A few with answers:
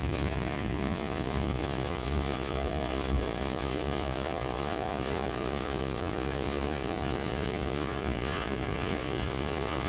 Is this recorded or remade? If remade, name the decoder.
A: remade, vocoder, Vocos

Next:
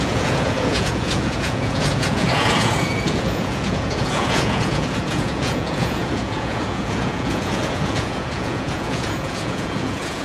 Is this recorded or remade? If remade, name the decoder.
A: remade, vocoder, Vocos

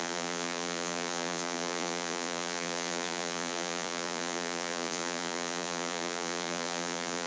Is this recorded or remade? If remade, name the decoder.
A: remade, vocoder, Vocos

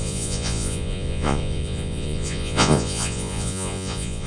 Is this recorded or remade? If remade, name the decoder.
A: remade, vocoder, Vocos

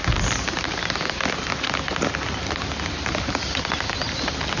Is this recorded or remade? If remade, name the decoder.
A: recorded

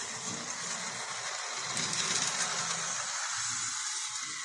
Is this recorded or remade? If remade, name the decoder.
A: recorded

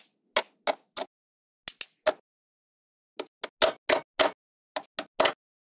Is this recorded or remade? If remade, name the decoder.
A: recorded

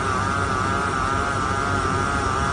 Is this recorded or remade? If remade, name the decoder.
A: recorded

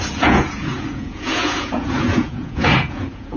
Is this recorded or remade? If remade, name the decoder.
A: remade, vocoder, Vocos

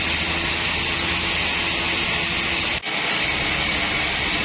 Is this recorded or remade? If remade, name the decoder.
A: recorded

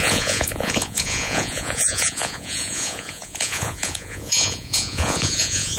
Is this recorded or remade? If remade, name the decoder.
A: remade, vocoder, Vocos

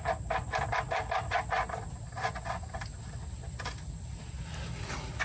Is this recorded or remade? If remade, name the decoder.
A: recorded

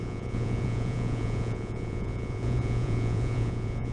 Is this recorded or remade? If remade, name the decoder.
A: remade, vocoder, Vocos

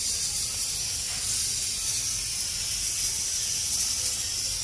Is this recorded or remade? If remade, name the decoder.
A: recorded